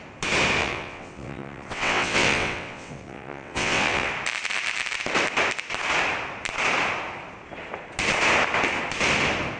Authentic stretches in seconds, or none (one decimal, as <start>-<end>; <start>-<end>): 0.0-0.6; 4.1-9.6